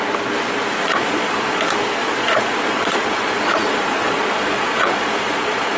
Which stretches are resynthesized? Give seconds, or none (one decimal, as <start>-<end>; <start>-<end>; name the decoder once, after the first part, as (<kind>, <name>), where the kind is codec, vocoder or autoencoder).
0.8-1.6 (vocoder, Vocos); 2.0-5.8